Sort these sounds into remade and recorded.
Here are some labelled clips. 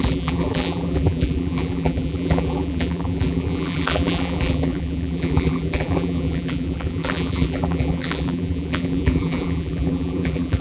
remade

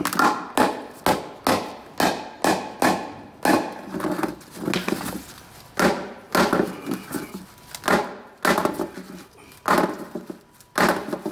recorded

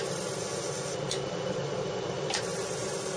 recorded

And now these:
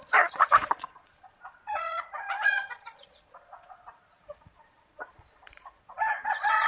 remade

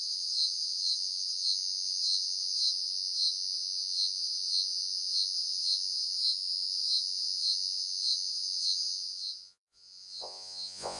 remade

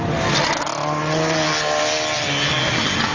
recorded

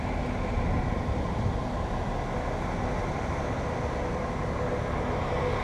recorded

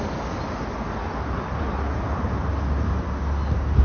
recorded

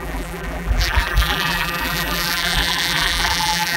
remade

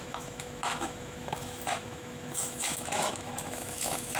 remade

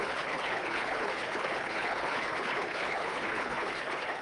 remade